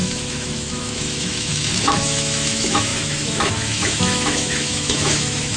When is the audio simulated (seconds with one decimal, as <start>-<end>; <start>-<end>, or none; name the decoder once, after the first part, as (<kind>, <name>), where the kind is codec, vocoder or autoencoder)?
0.0-5.6 (autoencoder, DAC-VAE)